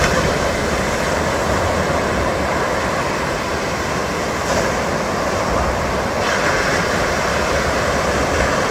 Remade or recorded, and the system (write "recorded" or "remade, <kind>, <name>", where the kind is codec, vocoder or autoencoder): recorded